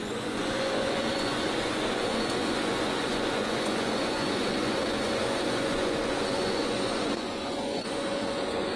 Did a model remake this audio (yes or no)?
yes